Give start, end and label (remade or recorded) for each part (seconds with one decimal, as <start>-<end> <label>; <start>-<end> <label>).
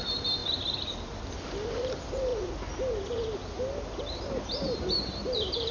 0.0-0.4 remade; 0.4-1.1 recorded; 1.1-2.3 remade; 2.3-4.5 recorded; 4.5-5.7 remade